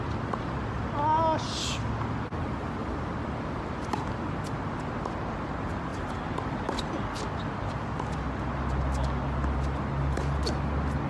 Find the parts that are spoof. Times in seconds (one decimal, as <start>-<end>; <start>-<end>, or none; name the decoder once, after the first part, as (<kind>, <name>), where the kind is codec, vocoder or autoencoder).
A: 2.8-4.1 (vocoder, BigVGAN v2); 5.9-6.8

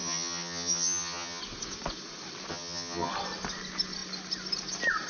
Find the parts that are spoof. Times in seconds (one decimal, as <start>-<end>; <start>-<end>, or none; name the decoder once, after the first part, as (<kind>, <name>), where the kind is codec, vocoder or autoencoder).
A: 0.0-1.4 (vocoder, HiFi-GAN); 2.5-3.1

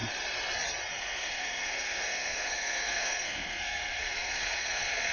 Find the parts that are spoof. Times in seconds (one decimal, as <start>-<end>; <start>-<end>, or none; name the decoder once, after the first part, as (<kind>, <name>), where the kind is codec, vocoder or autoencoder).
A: 1.0-5.1 (codec, SNAC)

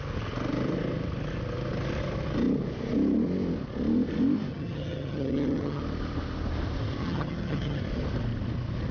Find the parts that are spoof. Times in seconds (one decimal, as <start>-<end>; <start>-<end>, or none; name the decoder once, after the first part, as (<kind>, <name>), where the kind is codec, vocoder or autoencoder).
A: 4.5-5.8 (vocoder, HiFi-GAN); 7.0-7.8

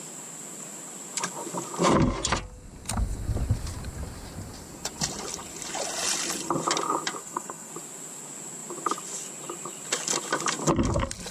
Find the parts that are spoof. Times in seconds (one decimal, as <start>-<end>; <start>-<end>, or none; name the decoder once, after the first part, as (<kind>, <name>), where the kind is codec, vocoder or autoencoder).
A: 7.2-7.7 (codec, SNAC)

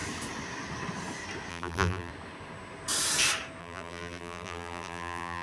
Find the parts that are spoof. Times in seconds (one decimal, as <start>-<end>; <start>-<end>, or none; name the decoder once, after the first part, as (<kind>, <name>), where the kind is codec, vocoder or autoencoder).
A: 1.5-2.1 (vocoder, BigVGAN v2); 3.6-5.4

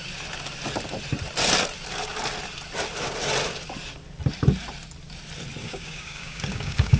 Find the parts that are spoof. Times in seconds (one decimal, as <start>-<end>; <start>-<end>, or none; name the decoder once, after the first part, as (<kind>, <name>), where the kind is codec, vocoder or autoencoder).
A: 5.6-7.0 (codec, DAC)

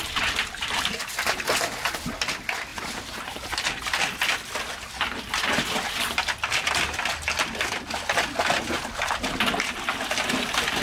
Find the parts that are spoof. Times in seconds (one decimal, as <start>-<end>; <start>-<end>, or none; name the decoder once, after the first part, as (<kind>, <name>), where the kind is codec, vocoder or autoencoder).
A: none